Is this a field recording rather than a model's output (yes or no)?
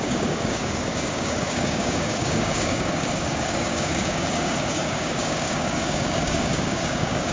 no